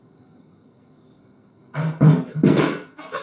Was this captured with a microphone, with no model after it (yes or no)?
no